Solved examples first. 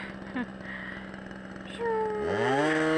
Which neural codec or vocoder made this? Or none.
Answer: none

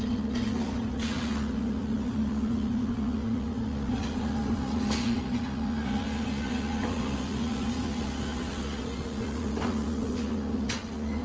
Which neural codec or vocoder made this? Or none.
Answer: vocoder, Vocos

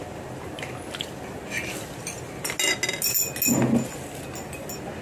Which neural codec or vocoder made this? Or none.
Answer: none